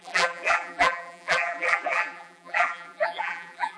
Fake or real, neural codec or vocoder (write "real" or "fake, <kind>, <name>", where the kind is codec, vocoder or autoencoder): fake, vocoder, BigVGAN v2